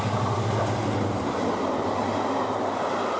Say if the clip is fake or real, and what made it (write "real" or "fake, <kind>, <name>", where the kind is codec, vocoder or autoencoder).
real